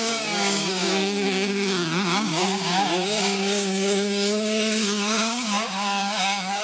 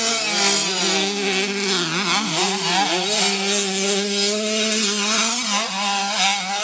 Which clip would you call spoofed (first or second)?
first